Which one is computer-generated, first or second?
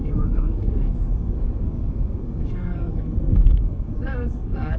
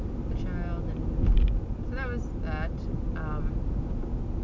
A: first